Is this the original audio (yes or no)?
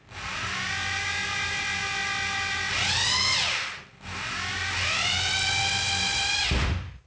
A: yes